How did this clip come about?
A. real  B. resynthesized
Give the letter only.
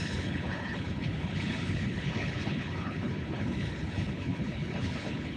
B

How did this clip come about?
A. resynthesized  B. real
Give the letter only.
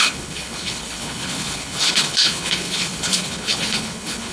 A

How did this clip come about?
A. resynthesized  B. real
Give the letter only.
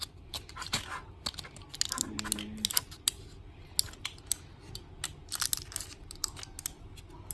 B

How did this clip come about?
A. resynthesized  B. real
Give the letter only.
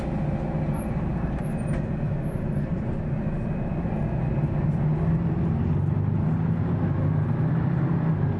B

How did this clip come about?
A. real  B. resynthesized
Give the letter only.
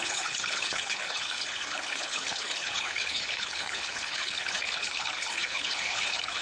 B